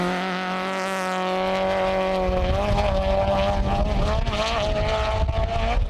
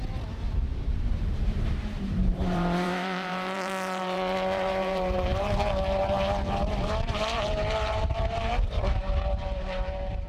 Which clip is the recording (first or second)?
first